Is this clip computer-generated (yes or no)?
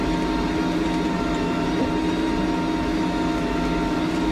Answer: no